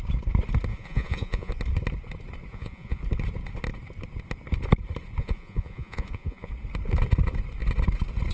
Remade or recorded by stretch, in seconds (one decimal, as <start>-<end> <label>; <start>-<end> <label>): 0.0-0.7 recorded; 0.7-1.5 remade; 1.5-2.5 recorded; 2.5-3.0 remade; 3.0-5.2 recorded; 5.2-6.5 remade; 6.5-8.3 recorded